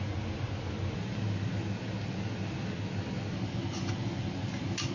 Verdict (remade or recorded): recorded